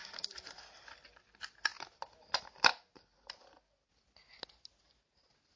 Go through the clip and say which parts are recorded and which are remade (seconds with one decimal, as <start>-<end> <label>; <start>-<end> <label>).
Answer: 0.0-5.6 recorded